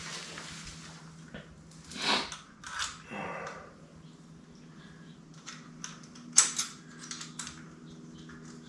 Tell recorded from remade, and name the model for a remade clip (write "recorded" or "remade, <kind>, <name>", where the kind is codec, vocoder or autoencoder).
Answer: recorded